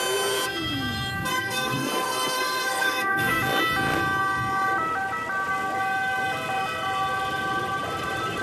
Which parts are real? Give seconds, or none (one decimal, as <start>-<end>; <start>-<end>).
0.0-1.3; 3.4-8.4